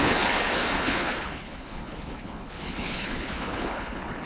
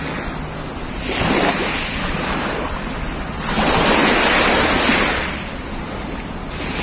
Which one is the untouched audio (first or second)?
second